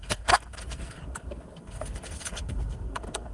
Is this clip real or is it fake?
fake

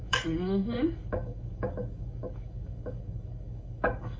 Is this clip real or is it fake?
fake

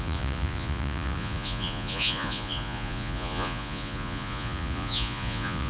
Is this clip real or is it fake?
fake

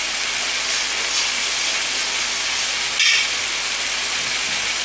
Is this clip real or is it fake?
real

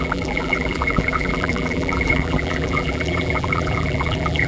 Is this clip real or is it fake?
fake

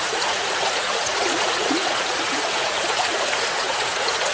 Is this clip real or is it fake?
fake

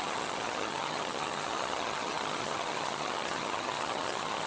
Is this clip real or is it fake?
fake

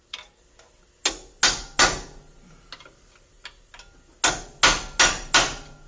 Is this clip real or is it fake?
real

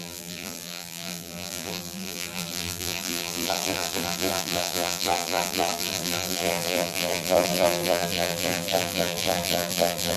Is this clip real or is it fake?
fake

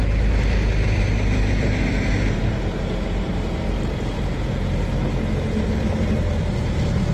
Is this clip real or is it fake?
real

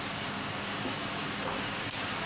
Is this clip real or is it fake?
real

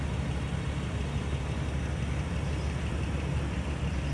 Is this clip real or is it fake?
real